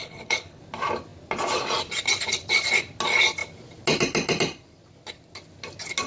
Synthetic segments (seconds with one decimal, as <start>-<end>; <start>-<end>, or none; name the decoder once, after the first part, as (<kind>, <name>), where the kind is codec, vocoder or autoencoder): 0.0-0.6 (codec, HILCodec)